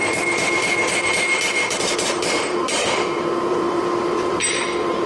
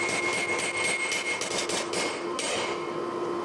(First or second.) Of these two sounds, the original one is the second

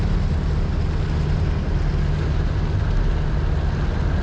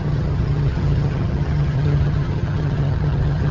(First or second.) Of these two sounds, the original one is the first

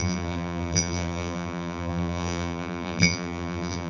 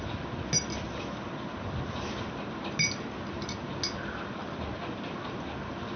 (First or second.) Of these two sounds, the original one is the second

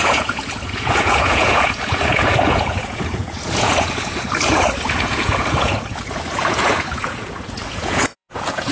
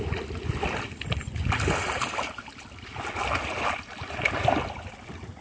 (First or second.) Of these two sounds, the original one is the second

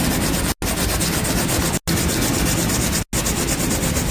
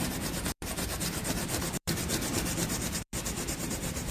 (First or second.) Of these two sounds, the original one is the first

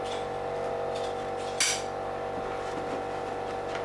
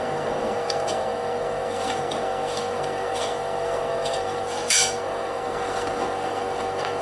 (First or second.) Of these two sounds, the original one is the first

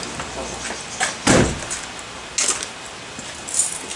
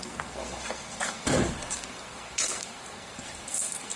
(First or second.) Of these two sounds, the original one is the first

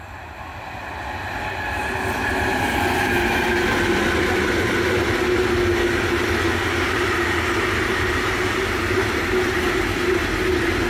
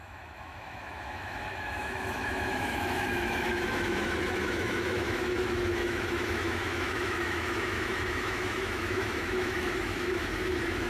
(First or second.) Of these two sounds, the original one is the first